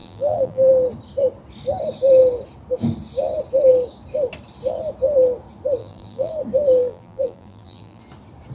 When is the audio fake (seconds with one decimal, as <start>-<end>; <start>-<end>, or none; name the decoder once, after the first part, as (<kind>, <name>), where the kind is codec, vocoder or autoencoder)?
0.0-0.7 (vocoder, BigVGAN v2); 5.8-6.3; 6.8-8.0